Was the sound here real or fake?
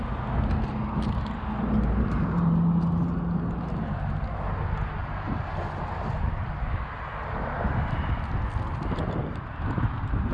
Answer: real